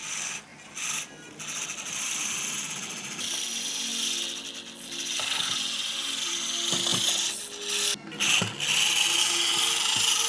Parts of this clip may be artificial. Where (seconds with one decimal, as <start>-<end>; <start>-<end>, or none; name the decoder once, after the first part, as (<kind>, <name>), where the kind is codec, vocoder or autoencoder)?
none